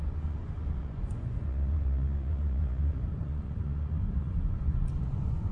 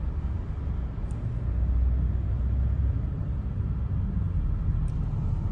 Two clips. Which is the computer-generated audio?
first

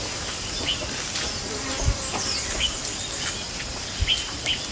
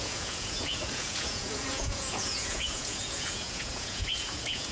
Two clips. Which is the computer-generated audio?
second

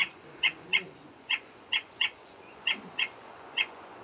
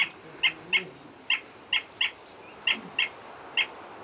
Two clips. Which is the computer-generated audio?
first